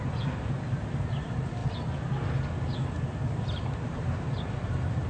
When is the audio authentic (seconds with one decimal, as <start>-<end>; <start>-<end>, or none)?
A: 1.6-3.9